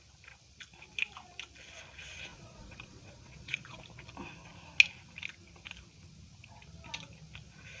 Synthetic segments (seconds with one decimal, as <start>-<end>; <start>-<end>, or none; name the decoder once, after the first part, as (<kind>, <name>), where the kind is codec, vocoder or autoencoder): 2.3-3.8 (vocoder, Vocos)